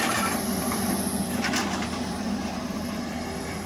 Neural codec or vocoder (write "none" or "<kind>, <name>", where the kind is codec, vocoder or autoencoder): vocoder, BigVGAN v2